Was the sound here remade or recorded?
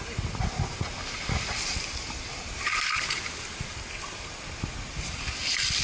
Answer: recorded